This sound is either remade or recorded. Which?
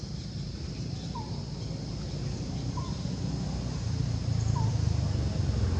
recorded